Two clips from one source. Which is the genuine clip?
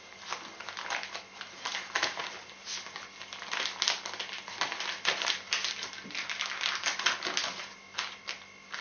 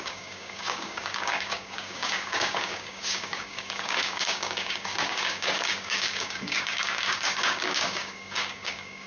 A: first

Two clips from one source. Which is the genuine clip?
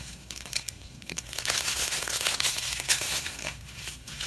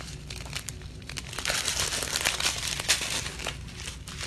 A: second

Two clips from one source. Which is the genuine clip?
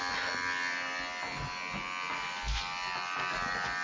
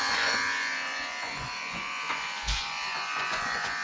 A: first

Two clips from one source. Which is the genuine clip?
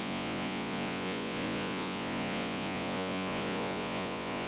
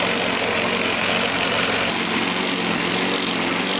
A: second